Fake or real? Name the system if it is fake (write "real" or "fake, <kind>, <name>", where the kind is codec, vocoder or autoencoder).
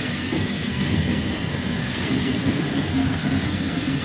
fake, codec, SNAC